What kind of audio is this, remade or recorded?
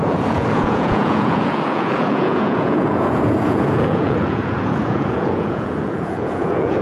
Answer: remade